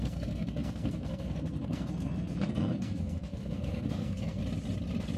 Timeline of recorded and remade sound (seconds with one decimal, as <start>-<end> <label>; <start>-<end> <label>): 0.0-4.4 remade; 4.4-5.2 recorded